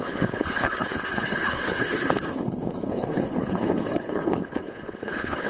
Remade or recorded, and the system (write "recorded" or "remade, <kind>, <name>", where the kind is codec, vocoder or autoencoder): remade, codec, HILCodec